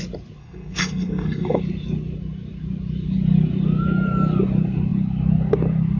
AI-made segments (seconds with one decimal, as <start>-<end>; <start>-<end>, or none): 0.4-1.6